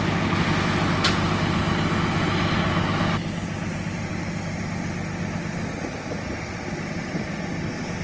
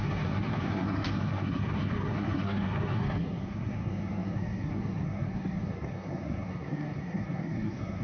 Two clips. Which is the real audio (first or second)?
first